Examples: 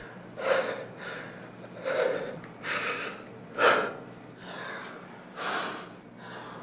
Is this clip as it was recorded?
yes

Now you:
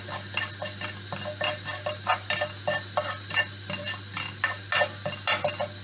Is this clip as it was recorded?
yes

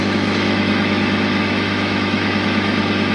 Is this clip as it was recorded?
no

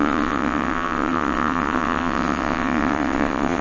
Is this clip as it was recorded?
no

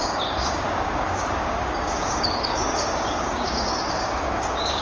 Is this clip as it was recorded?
no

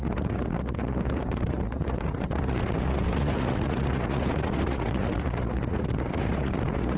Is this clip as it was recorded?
no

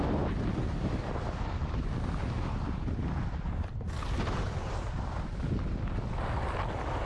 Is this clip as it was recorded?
yes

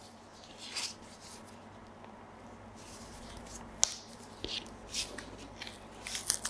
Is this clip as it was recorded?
yes